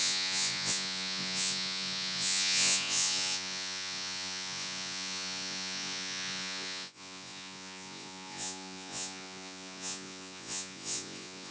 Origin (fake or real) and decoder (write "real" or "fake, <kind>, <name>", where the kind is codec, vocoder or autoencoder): fake, vocoder, Vocos